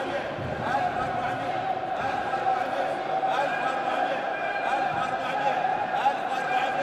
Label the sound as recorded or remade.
remade